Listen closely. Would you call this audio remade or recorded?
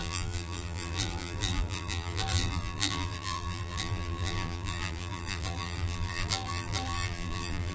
remade